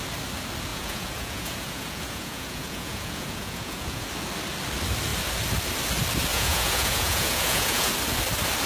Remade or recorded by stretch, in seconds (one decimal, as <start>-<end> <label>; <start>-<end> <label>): 0.0-0.7 recorded; 0.7-4.1 remade; 4.1-6.3 recorded; 6.3-7.9 remade; 7.9-8.7 recorded